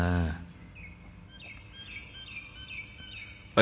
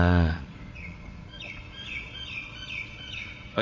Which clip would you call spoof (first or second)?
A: second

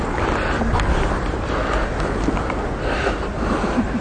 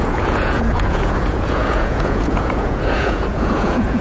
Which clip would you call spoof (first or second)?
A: second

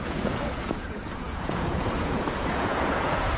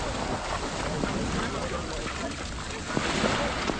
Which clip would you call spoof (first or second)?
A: first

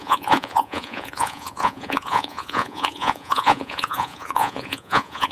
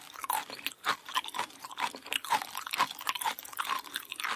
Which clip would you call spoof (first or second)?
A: first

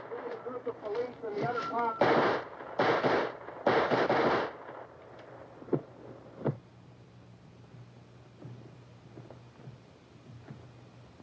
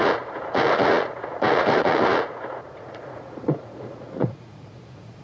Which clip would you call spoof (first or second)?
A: second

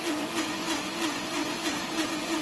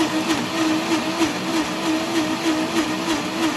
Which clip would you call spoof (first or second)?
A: first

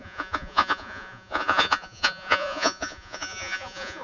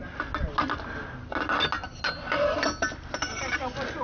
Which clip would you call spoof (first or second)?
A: first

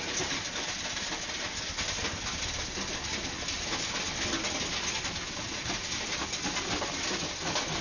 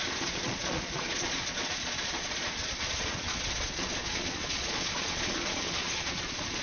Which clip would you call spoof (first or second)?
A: second